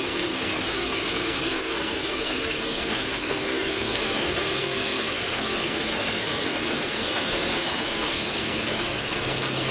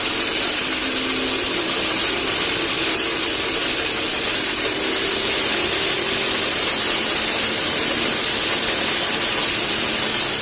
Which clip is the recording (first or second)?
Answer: second